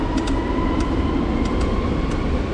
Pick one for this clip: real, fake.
real